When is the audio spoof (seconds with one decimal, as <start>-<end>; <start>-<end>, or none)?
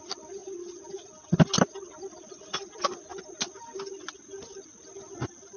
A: none